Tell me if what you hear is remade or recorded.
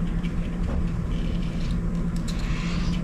recorded